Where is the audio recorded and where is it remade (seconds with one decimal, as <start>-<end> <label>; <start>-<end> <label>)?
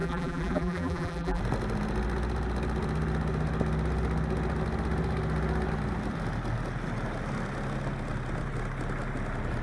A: 0.0-1.4 remade; 1.4-9.6 recorded